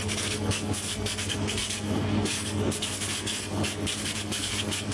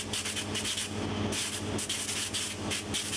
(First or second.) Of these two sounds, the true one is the second